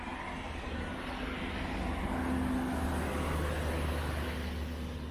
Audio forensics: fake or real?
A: real